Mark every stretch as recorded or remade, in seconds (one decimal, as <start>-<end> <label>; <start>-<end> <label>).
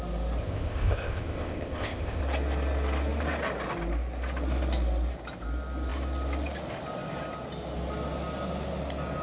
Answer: 0.0-0.4 recorded; 0.4-2.2 remade; 2.2-9.2 recorded